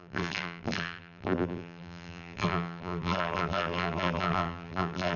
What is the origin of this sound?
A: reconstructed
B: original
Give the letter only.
A